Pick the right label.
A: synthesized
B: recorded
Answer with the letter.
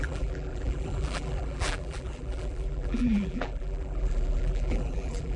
A